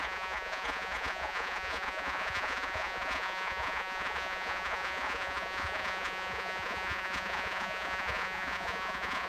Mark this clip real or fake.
fake